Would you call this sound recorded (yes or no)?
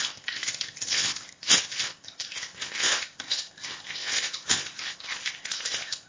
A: no